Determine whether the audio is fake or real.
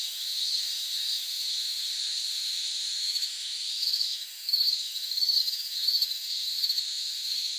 fake